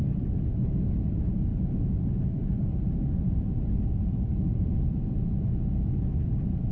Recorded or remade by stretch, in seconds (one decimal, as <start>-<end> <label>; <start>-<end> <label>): 0.0-1.5 recorded; 1.5-5.4 remade; 5.4-6.7 recorded